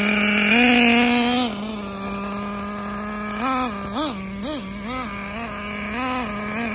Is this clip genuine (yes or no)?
yes